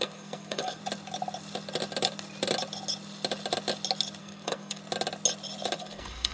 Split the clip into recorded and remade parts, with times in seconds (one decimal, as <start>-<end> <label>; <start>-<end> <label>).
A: 0.0-0.8 remade; 0.8-4.2 recorded; 4.2-4.8 remade; 4.8-5.8 recorded; 5.8-6.3 remade